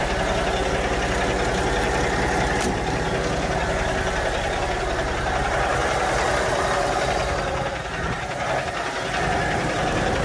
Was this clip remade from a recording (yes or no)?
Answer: no